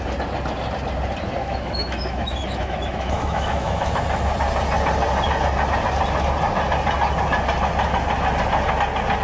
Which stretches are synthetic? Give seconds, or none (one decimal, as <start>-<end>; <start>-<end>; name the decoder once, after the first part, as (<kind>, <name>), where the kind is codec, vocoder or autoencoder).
1.4-3.9 (autoencoder, DAC-VAE)